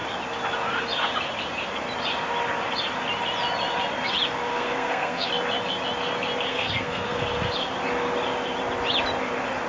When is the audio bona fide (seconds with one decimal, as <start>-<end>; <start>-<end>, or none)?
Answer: 0.0-4.5; 5.3-6.5; 7.4-9.7